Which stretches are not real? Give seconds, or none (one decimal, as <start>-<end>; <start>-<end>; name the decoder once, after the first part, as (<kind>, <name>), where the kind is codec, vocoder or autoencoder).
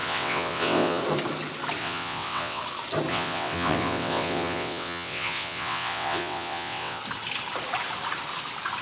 0.0-1.0 (vocoder, WaveNeXt); 1.8-2.6; 3.1-7.0